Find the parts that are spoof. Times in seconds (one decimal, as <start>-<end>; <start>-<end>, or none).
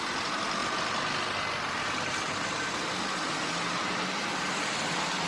0.0-0.6; 3.8-5.3